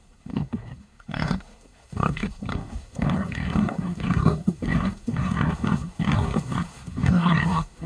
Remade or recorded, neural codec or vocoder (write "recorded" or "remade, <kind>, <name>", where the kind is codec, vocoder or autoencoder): remade, codec, SNAC